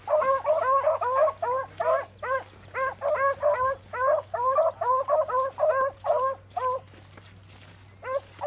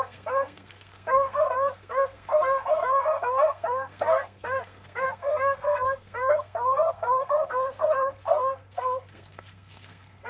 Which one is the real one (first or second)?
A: first